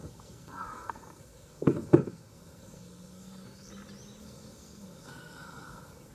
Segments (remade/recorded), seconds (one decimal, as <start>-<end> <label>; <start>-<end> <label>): 0.0-3.7 remade; 3.7-4.2 recorded; 4.2-6.1 remade